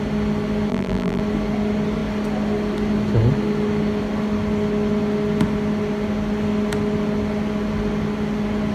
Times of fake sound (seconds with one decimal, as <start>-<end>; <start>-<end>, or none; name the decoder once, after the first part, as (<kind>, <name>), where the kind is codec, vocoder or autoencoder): 0.7-1.2 (vocoder, BigVGAN v2)